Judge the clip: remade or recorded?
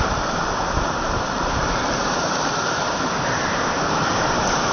remade